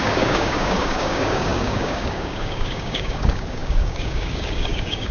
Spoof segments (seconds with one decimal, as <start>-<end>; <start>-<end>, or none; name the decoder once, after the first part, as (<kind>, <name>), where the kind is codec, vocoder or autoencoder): 0.0-5.1 (codec, DAC)